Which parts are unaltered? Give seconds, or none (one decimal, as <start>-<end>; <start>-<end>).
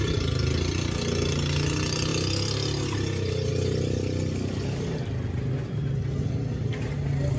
0.0-7.4